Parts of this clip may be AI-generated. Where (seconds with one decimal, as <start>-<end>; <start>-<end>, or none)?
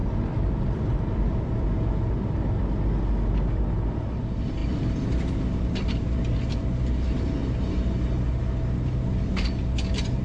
0.0-1.4